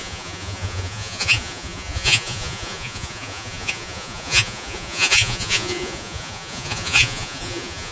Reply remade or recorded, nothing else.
remade